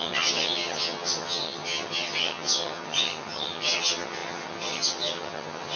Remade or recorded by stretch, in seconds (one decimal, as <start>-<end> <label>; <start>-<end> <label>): 0.0-5.8 remade